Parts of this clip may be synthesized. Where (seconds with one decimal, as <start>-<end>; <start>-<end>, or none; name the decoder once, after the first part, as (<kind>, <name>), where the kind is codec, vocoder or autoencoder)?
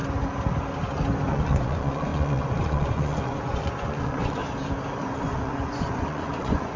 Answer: 1.3-4.4 (vocoder, Vocos); 5.0-6.8